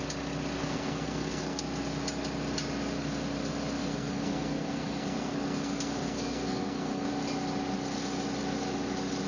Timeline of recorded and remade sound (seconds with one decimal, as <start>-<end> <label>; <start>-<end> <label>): 0.0-0.6 recorded; 0.6-1.6 remade; 1.6-3.8 recorded; 3.8-7.1 remade; 7.1-9.3 recorded

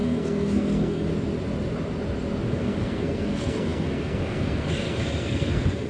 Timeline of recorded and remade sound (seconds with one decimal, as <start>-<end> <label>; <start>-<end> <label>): 0.0-1.1 remade; 1.1-2.5 recorded; 2.5-5.9 remade

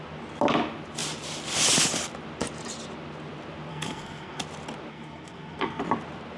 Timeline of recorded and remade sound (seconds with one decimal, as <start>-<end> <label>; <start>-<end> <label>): 0.0-3.7 recorded; 3.7-4.4 remade; 4.4-4.9 recorded; 4.9-5.8 remade; 5.8-6.4 recorded

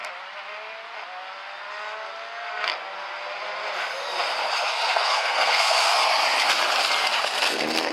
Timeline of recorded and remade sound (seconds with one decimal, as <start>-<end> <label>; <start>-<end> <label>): 0.0-4.7 recorded; 4.7-6.0 remade; 6.0-7.4 recorded; 7.4-7.9 remade

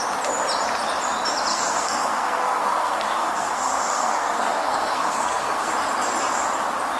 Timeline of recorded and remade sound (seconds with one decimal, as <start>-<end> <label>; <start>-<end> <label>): 0.0-1.5 recorded; 1.5-5.7 remade; 5.7-7.0 recorded

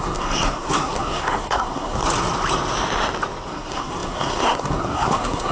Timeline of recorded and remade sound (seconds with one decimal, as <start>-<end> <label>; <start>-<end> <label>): 0.0-2.0 remade; 2.0-3.5 recorded; 3.5-5.5 remade

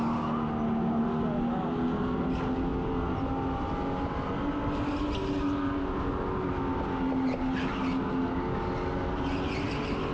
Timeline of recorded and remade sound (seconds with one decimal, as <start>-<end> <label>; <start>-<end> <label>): 0.0-10.1 recorded